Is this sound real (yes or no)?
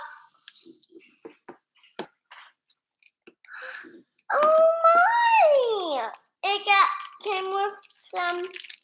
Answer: yes